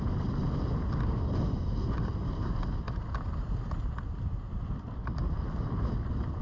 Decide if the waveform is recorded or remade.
recorded